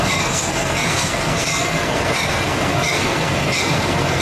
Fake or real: fake